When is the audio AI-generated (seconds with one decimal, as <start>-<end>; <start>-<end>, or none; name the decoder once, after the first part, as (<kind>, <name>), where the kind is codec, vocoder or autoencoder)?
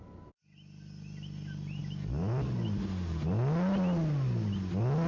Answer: none